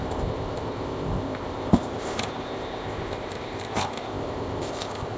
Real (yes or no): no